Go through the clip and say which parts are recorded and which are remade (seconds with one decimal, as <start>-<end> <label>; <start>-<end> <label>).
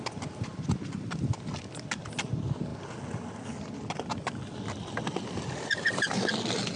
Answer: 0.0-6.8 recorded